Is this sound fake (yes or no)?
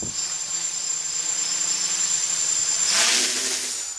no